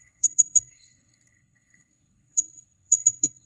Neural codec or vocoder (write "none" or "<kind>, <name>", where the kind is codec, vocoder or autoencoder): codec, SNAC